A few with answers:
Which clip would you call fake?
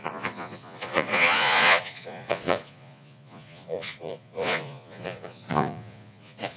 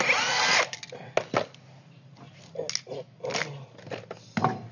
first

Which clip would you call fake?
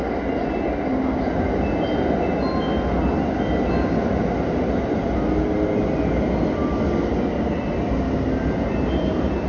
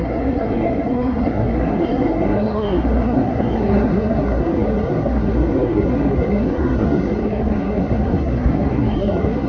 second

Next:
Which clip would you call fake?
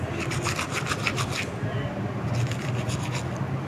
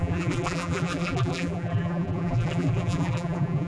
second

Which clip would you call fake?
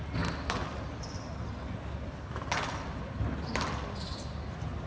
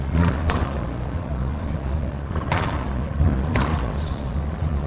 second